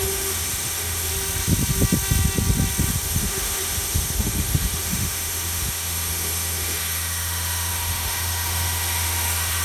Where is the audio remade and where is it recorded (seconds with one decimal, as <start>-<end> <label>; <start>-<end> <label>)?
0.0-1.1 remade; 1.1-2.9 recorded; 2.9-9.6 remade